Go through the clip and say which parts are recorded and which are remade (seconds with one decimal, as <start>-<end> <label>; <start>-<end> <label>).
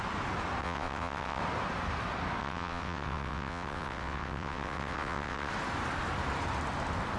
0.0-0.6 recorded; 0.6-1.4 remade; 1.4-2.4 recorded; 2.4-5.5 remade; 5.5-7.2 recorded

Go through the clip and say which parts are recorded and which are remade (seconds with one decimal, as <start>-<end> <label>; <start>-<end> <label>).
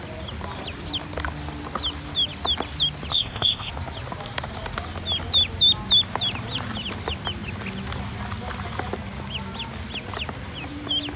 0.0-3.1 recorded; 3.1-3.7 remade; 3.7-11.2 recorded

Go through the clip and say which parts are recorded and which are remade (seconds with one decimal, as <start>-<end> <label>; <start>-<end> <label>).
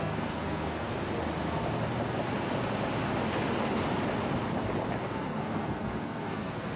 0.0-0.9 remade; 0.9-5.0 recorded; 5.0-6.8 remade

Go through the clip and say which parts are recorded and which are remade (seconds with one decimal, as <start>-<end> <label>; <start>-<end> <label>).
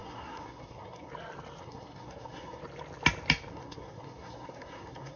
0.0-1.1 remade; 1.1-1.6 recorded; 1.6-2.6 remade; 2.6-3.5 recorded; 3.5-5.2 remade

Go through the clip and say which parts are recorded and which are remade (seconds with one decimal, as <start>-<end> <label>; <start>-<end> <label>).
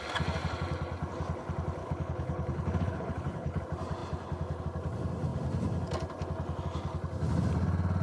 0.0-1.8 recorded; 1.8-3.6 remade; 3.6-8.0 recorded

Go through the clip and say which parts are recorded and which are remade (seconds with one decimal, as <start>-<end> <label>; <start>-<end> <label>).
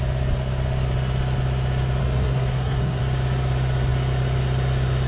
0.0-2.0 recorded; 2.0-3.0 remade; 3.0-5.1 recorded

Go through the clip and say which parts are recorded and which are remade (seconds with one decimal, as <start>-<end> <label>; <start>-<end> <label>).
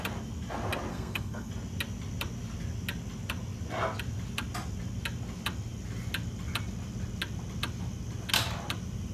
0.0-0.9 recorded; 0.9-1.5 remade; 1.5-9.1 recorded